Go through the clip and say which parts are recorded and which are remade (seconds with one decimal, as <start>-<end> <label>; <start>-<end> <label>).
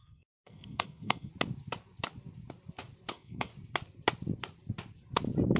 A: 0.0-1.3 remade; 1.3-3.1 recorded; 3.1-3.5 remade; 3.5-5.6 recorded